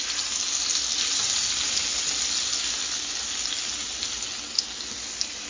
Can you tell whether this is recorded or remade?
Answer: recorded